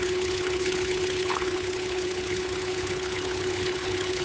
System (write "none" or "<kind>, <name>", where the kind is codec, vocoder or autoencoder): codec, HILCodec